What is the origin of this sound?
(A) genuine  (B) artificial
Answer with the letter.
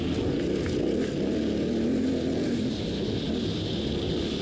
A